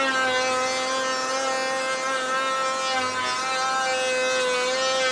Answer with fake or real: real